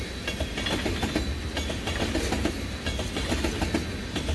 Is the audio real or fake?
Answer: real